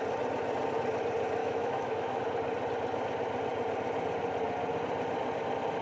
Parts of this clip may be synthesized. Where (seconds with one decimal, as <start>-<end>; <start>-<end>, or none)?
1.4-2.2